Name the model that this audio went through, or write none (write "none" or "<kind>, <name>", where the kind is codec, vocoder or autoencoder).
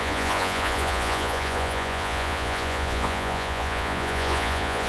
vocoder, Vocos